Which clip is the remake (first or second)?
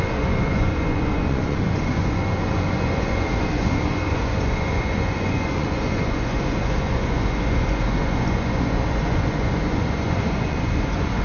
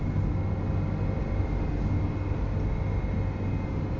first